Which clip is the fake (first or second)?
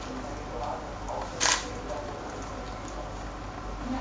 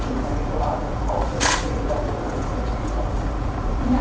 second